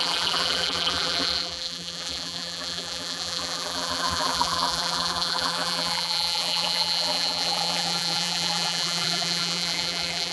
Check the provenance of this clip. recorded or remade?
remade